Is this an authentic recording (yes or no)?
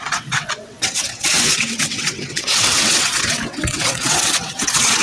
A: no